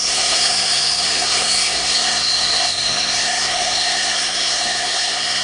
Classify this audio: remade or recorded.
remade